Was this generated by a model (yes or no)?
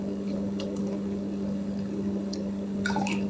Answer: yes